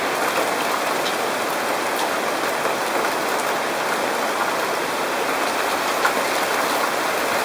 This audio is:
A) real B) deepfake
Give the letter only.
A